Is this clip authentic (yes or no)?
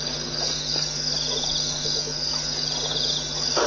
yes